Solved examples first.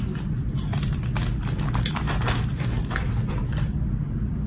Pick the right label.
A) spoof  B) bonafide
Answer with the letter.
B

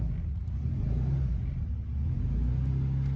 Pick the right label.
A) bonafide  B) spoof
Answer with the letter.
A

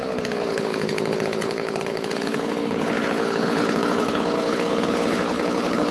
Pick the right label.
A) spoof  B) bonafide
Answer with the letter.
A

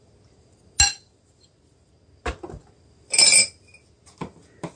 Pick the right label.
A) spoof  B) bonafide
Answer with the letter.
B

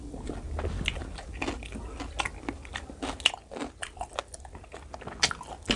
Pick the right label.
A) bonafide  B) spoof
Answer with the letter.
A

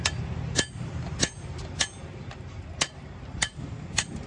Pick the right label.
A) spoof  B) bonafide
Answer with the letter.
B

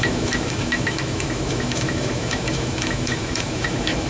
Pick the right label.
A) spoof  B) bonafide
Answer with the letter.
A